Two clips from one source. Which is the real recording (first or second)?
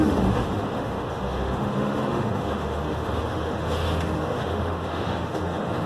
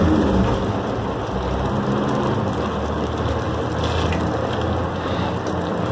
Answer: second